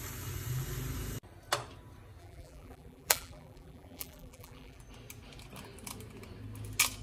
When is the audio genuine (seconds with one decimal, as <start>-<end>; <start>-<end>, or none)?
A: 0.0-2.2; 4.8-7.0